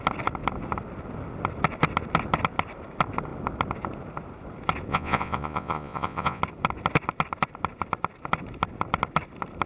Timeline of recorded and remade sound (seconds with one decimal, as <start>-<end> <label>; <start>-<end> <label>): 0.0-4.9 recorded; 4.9-6.4 remade; 6.4-9.7 recorded